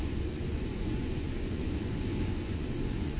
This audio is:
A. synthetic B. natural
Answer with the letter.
A